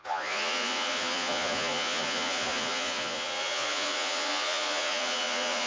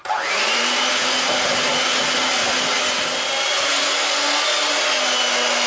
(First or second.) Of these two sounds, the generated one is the first